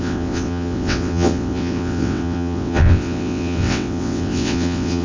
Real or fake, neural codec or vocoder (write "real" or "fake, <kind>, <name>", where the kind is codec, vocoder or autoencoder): fake, vocoder, WaveNeXt